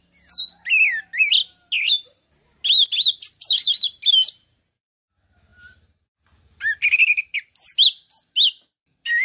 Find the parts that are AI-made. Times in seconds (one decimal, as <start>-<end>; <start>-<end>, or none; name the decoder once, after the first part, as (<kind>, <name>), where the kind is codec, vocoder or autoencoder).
none